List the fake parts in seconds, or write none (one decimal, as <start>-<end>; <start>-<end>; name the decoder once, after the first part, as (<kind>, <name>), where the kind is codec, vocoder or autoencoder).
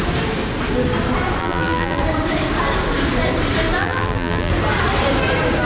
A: 1.4-2.0 (vocoder, BigVGAN v2); 3.8-4.5